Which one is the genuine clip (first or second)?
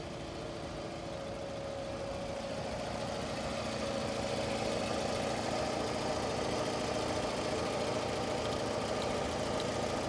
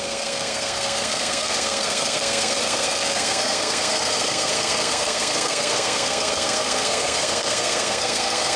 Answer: first